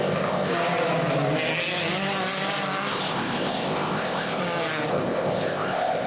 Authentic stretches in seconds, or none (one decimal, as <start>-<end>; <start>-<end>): 0.5-2.9; 4.4-4.9